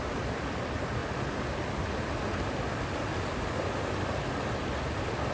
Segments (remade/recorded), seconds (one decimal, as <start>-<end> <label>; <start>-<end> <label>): 0.0-5.3 recorded